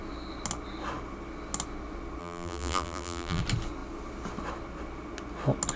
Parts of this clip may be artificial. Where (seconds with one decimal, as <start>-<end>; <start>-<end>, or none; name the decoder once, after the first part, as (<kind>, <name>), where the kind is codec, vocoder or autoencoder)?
2.2-3.4 (vocoder, BigVGAN v2)